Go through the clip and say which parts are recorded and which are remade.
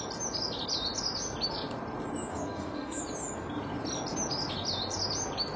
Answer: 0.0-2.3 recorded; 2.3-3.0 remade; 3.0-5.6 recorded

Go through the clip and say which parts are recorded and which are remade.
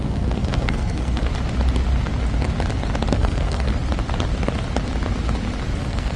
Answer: 0.0-1.3 remade; 1.3-3.1 recorded; 3.1-3.7 remade; 3.7-5.8 recorded; 5.8-6.2 remade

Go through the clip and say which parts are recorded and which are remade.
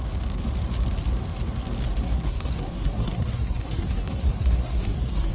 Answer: 0.0-2.0 recorded; 2.0-5.3 remade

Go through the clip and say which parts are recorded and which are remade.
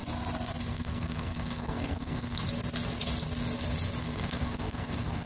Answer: 0.0-0.7 recorded; 0.7-2.4 remade; 2.4-4.0 recorded; 4.0-5.3 remade